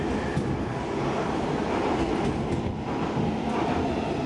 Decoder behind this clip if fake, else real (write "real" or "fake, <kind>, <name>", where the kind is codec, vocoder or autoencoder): real